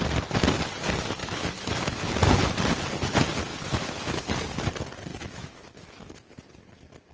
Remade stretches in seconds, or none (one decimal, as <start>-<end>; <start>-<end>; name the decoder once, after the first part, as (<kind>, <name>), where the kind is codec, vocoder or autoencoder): 1.2-2.5 (autoencoder, DAC-VAE); 3.5-4.2; 5.1-6.0